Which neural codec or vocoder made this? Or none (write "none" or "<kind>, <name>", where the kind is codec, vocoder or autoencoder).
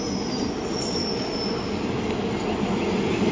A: none